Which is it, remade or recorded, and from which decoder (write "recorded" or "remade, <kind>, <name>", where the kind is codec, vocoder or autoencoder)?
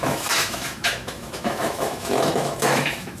remade, autoencoder, DAC-VAE